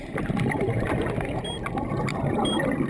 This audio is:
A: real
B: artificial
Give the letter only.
B